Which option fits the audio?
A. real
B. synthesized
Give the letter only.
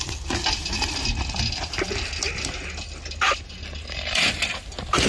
A